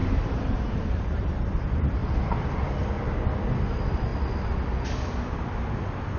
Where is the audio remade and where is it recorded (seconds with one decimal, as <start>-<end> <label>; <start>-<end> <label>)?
0.0-1.3 remade; 1.3-2.0 recorded; 2.0-2.7 remade; 2.7-6.2 recorded